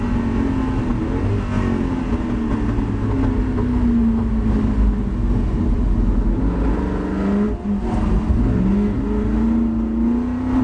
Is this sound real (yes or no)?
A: yes